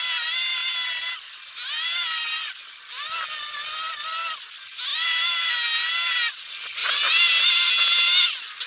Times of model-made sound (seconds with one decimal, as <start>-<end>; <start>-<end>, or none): 4.9-5.5; 6.8-7.7